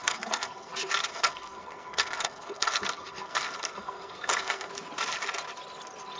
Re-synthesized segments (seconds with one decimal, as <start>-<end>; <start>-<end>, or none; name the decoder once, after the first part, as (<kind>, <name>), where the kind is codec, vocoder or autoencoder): 0.0-0.7 (codec, SNAC); 1.1-4.7